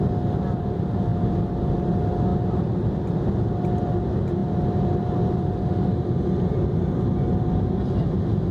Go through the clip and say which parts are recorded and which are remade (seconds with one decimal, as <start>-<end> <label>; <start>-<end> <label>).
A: 0.0-8.5 recorded